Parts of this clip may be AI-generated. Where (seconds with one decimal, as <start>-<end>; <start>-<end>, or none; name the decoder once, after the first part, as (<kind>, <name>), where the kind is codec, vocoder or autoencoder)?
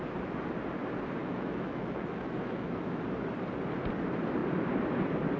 1.2-3.0 (autoencoder, DAC-VAE)